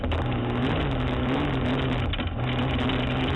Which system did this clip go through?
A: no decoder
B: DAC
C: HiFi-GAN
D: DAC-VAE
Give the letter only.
A